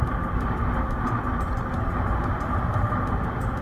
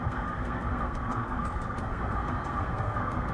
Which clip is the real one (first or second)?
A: first